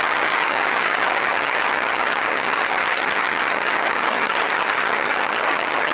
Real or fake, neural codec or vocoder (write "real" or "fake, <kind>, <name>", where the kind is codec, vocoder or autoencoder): fake, vocoder, HiFi-GAN